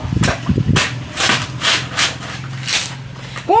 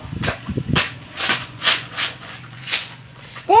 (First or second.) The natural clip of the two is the first